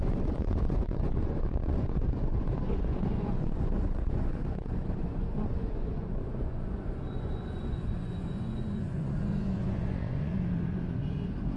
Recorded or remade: remade